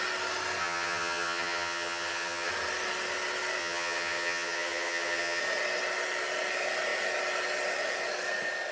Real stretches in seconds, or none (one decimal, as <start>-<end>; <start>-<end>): 0.0-0.6; 2.5-3.6; 5.4-8.7